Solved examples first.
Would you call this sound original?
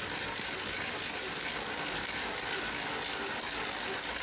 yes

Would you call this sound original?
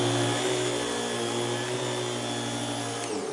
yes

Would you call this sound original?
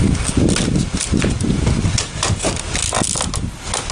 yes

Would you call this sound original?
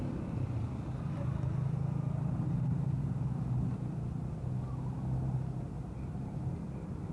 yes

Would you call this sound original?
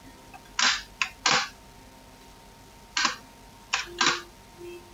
yes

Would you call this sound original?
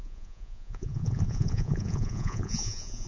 no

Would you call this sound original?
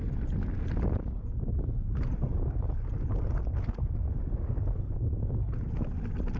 yes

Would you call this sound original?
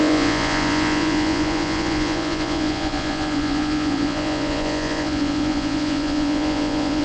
no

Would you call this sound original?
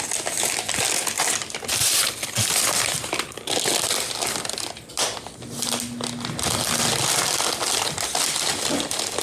yes